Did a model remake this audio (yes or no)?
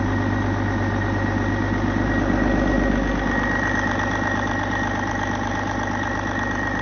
no